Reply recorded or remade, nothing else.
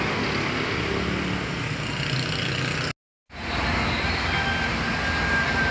recorded